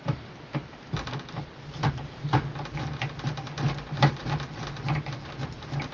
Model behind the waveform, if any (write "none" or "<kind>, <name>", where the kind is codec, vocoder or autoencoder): none